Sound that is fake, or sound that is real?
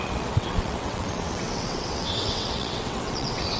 fake